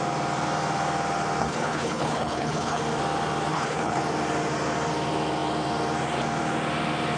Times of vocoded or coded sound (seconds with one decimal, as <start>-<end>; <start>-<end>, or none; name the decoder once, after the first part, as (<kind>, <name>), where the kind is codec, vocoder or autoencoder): 1.4-2.8 (codec, HILCodec); 3.5-4.0